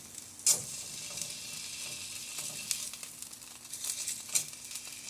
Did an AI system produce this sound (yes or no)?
no